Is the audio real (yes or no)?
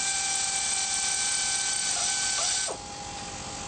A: yes